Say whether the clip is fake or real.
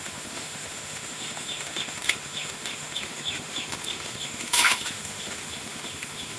fake